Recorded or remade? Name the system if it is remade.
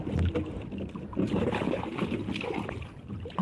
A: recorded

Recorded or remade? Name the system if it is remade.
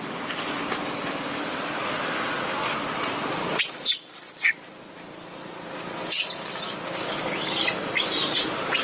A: recorded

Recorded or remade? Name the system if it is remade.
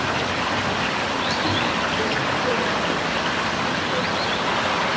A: recorded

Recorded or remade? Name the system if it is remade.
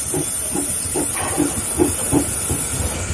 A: recorded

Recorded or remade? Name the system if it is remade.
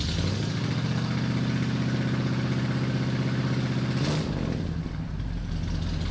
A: recorded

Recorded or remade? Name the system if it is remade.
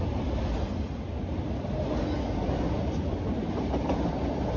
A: recorded